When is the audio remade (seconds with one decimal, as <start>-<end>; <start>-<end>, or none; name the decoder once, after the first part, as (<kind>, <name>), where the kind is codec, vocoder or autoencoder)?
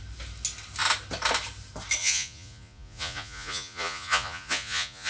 2.0-5.1 (vocoder, Vocos)